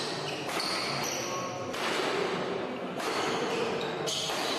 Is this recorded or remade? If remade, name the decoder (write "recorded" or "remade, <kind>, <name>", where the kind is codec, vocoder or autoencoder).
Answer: recorded